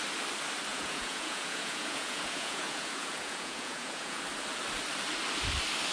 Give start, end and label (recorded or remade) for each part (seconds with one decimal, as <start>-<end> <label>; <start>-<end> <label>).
0.0-0.7 recorded; 0.7-4.2 remade; 4.2-5.9 recorded